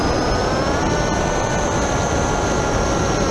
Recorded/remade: recorded